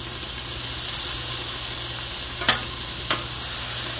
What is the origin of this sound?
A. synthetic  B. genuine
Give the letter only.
B